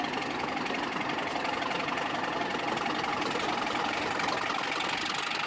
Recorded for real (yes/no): yes